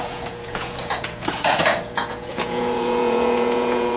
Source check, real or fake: fake